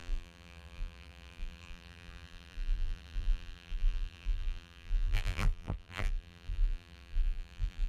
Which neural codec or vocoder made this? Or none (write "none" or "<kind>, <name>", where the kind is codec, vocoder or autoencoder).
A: vocoder, BigVGAN v2